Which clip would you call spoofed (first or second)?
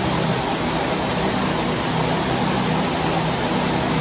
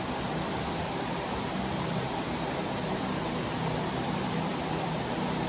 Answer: second